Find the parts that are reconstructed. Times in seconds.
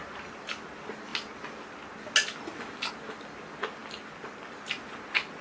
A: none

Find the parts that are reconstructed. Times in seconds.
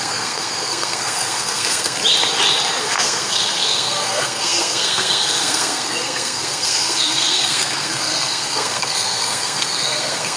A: 0.0-2.0 (codec, SNAC); 2.8-10.4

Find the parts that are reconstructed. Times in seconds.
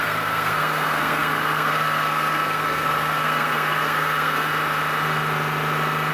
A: 0.0-4.5 (codec, SNAC)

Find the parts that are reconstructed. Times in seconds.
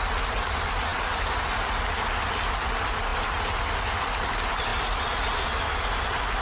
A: none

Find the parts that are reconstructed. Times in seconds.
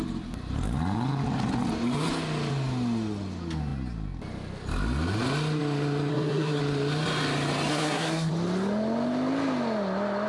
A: 6.1-6.6 (codec, SNAC); 7.7-8.3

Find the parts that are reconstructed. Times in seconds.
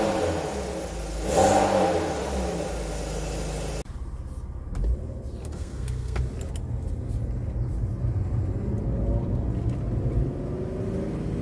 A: 5.4-6.2 (codec, SNAC)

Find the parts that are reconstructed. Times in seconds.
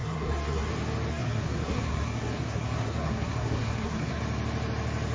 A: 0.0-0.7 (codec, SNAC); 1.1-4.2